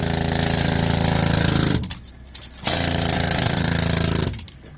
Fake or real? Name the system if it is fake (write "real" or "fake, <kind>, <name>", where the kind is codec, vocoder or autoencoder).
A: real